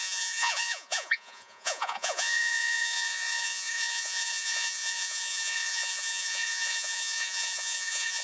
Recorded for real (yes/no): no